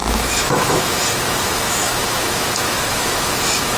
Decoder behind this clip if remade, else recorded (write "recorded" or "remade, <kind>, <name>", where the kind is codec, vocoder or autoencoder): remade, autoencoder, DAC-VAE